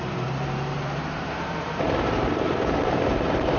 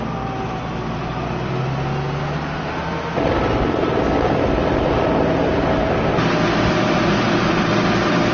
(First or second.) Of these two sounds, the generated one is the first